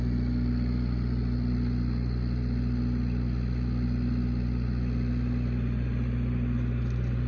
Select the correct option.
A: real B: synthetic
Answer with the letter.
A